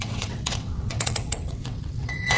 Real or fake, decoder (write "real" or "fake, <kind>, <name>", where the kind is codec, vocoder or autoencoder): fake, vocoder, WaveNeXt